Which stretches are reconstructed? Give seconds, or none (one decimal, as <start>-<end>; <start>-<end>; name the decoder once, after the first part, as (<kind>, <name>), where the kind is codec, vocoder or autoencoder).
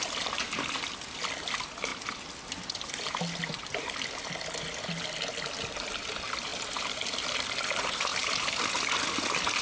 1.9-4.2 (vocoder, BigVGAN v2); 6.5-7.2; 8.1-8.6